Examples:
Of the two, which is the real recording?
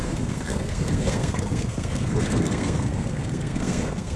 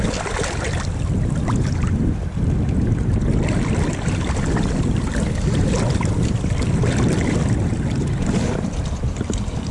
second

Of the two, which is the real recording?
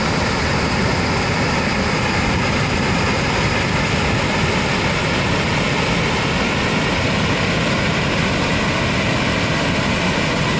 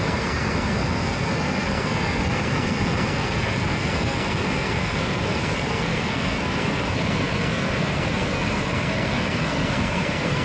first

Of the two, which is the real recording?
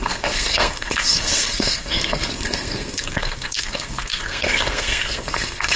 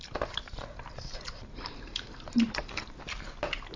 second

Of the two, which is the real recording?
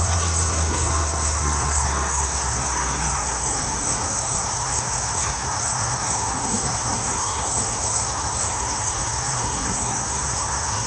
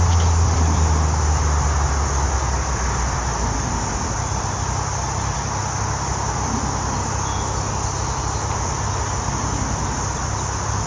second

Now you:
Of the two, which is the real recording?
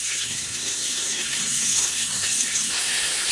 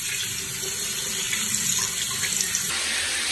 second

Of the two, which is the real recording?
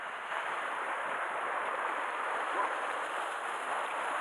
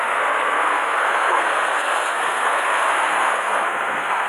first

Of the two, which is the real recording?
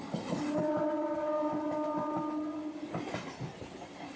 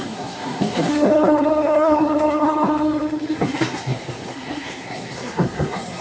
first